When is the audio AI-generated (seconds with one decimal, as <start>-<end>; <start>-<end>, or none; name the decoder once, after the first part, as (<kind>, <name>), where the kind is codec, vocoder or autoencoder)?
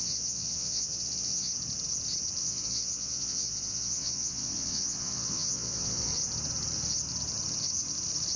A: 0.0-1.5 (vocoder, Vocos); 2.4-6.1